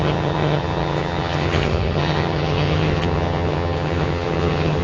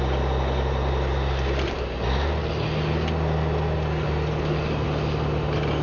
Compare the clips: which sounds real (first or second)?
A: second